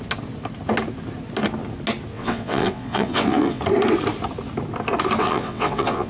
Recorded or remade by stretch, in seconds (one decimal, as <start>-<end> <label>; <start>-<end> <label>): 0.0-2.1 recorded; 2.1-3.6 remade; 3.6-5.2 recorded; 5.2-6.1 remade